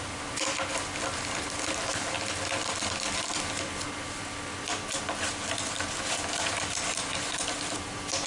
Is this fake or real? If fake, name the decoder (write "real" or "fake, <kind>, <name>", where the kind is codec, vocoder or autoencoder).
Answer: real